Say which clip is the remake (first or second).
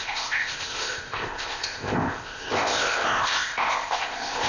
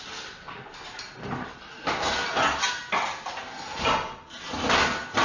first